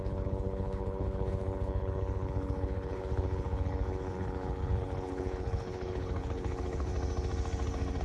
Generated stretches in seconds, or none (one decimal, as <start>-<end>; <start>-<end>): 0.0-6.9